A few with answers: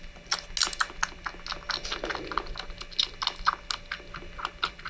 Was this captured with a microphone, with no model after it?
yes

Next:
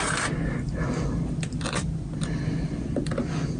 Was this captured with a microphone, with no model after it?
yes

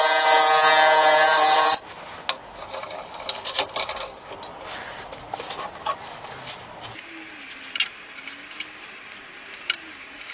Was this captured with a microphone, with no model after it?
yes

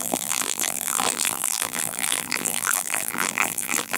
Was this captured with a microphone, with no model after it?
no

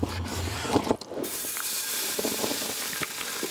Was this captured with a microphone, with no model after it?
no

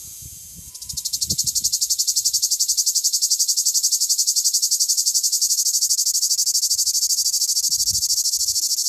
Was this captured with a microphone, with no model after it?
yes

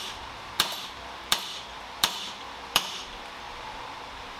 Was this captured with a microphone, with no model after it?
no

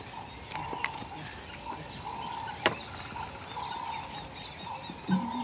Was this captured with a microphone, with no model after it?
yes